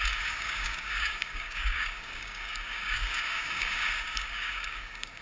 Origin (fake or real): fake